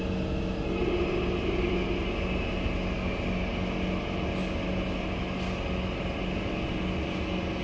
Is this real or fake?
real